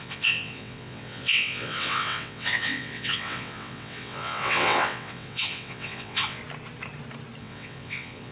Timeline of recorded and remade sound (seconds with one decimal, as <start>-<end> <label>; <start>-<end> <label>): 0.0-6.4 remade; 6.4-7.4 recorded; 7.4-8.3 remade